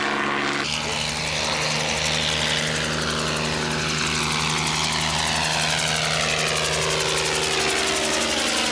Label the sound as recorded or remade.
recorded